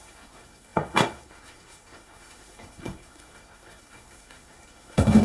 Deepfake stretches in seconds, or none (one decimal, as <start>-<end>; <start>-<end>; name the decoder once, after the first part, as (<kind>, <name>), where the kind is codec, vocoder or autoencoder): 0.0-5.2 (codec, SNAC)